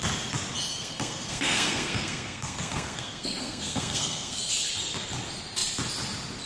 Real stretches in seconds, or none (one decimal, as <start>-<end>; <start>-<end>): 0.0-0.7; 4.4-6.5